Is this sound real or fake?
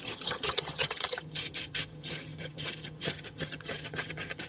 fake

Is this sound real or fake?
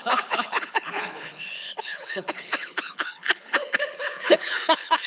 fake